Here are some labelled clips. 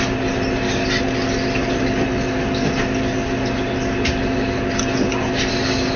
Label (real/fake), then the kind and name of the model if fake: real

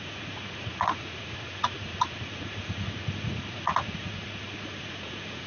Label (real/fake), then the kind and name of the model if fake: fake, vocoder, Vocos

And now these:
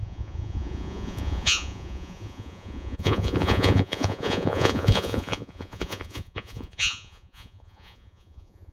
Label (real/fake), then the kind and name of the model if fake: fake, vocoder, Vocos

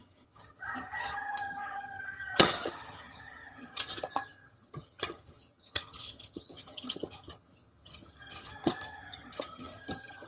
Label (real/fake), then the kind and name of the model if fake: fake, vocoder, HiFi-GAN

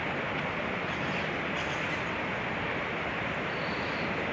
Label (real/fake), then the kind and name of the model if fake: real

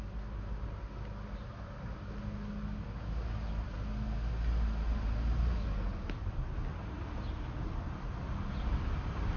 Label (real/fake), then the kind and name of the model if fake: real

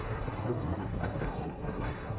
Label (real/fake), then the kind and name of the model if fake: fake, codec, SNAC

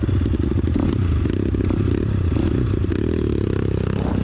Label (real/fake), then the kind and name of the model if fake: real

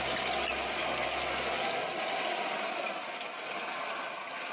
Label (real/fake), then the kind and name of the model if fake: real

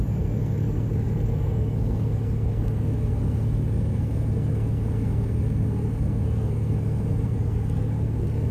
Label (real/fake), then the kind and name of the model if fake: fake, codec, SNAC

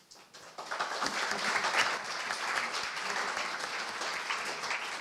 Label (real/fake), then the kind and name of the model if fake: real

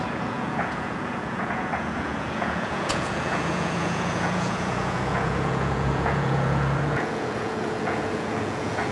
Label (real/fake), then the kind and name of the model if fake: fake, vocoder, Vocos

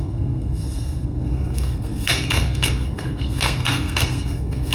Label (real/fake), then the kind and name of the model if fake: fake, codec, SNAC